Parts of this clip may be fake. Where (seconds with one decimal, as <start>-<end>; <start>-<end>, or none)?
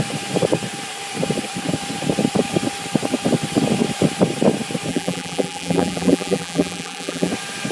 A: 4.9-7.3